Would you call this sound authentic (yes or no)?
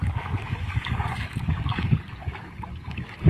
no